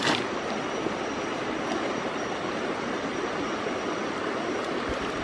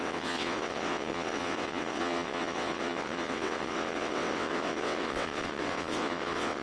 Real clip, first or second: first